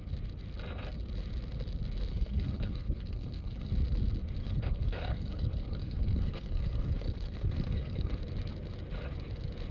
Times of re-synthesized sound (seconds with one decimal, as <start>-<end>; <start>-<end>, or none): 2.1-3.7; 4.4-8.2